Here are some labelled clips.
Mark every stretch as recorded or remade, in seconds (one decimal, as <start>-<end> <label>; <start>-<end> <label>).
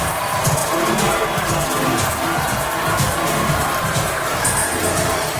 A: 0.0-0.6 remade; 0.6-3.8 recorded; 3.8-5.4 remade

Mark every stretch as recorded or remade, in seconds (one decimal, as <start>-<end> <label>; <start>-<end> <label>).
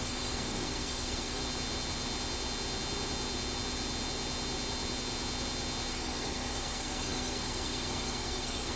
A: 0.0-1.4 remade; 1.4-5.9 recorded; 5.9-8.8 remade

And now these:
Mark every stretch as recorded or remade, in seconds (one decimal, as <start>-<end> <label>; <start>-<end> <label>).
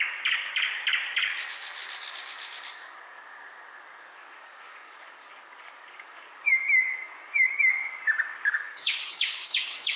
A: 0.0-7.8 remade; 7.8-8.5 recorded; 8.5-10.0 remade